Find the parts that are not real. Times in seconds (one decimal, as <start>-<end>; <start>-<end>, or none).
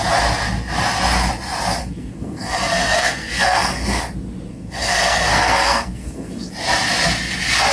1.8-4.0; 4.5-6.5